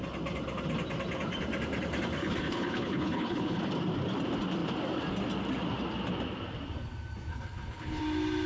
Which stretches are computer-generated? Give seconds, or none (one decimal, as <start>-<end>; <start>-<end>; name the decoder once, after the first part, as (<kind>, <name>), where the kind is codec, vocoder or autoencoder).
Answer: 2.2-3.6 (codec, HILCodec); 7.3-8.0